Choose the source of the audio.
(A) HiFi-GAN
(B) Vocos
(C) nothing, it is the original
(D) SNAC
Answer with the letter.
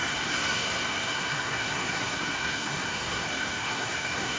D